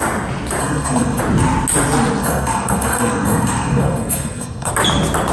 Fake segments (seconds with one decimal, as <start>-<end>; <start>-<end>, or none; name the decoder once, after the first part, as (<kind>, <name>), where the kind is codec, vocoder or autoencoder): 0.6-1.2 (codec, SNAC); 2.2-4.7